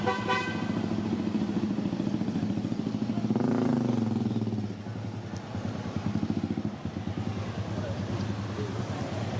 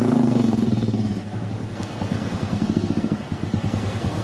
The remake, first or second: second